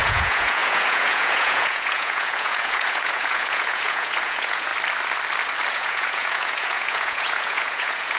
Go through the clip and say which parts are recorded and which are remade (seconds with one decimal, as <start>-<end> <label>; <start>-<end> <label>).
0.0-4.7 remade; 4.7-5.7 recorded; 5.7-8.2 remade